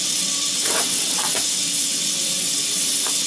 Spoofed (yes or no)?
yes